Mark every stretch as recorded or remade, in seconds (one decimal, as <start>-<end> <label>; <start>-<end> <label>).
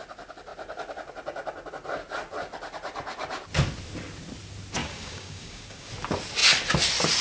0.0-4.8 recorded; 4.8-5.9 remade; 5.9-7.2 recorded